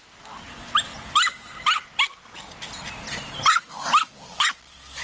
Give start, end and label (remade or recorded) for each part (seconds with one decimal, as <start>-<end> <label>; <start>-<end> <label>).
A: 0.0-5.0 recorded